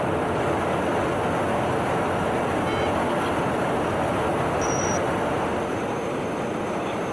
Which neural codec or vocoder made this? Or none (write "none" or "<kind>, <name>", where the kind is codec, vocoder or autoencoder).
none